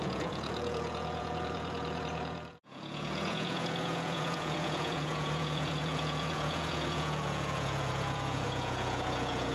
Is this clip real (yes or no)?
no